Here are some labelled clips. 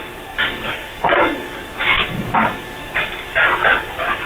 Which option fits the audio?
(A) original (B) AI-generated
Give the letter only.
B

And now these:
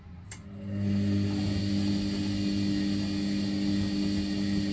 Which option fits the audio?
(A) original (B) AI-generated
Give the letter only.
A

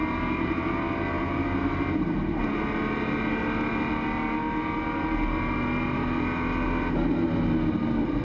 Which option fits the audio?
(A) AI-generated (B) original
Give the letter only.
B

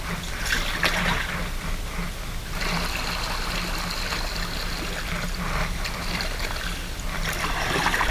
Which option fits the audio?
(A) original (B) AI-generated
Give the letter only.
A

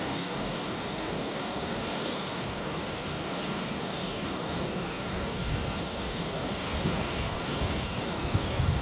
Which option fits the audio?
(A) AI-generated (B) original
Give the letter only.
A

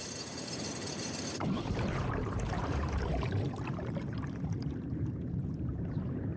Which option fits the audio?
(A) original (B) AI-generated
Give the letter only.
B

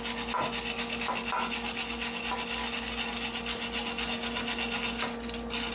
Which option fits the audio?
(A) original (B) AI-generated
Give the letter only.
A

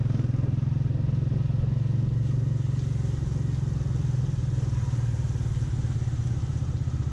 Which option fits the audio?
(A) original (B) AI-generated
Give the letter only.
A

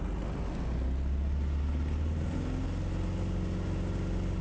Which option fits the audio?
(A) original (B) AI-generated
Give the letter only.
A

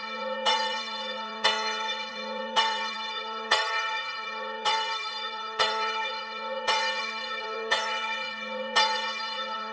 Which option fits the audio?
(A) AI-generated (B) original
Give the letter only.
A